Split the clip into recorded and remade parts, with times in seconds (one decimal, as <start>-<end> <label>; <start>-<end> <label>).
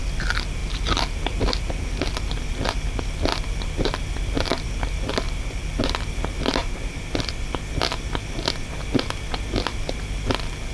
0.0-4.5 recorded; 4.5-5.1 remade; 5.1-6.6 recorded; 6.6-7.7 remade; 7.7-10.7 recorded